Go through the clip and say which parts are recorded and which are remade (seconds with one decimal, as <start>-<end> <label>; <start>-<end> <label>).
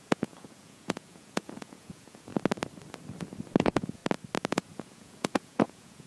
0.0-2.3 remade; 2.3-3.6 recorded; 3.6-4.0 remade; 4.0-4.5 recorded; 4.5-6.1 remade